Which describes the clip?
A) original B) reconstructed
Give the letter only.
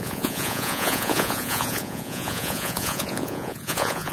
B